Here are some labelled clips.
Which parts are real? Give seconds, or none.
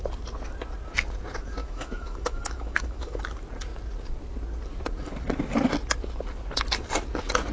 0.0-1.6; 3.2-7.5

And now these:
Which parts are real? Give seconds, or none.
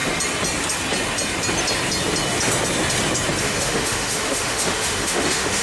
0.0-3.4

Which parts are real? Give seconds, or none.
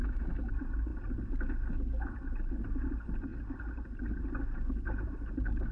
0.5-5.7